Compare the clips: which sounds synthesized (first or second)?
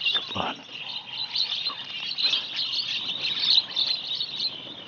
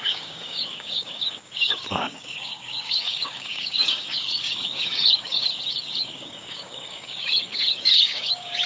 second